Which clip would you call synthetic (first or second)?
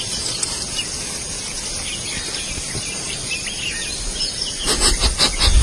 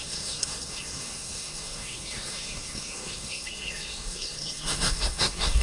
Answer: second